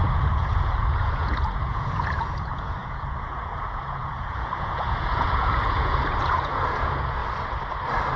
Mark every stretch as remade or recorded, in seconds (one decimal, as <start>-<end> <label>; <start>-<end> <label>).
0.0-7.2 remade; 7.2-8.2 recorded